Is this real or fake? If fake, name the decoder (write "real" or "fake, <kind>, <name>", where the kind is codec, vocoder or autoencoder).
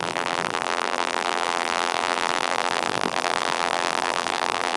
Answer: fake, vocoder, BigVGAN v2